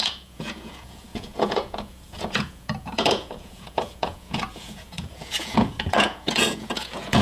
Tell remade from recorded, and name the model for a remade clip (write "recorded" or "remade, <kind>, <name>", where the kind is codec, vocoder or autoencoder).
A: remade, vocoder, Vocos